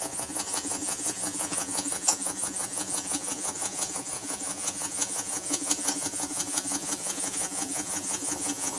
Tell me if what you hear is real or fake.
fake